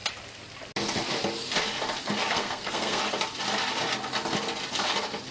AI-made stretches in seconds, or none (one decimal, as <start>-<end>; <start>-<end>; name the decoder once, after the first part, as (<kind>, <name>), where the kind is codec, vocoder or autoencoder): 2.3-3.0 (codec, SNAC)